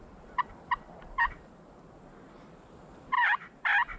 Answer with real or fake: real